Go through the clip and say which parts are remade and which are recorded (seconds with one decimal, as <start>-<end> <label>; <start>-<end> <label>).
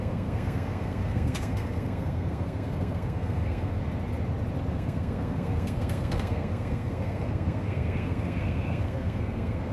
0.0-3.8 remade; 3.8-4.7 recorded; 4.7-9.7 remade